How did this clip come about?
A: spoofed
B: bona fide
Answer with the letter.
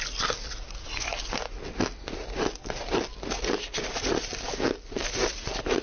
B